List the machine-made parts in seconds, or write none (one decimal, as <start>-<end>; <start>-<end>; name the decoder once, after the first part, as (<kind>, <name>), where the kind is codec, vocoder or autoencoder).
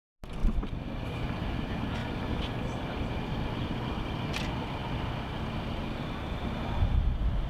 none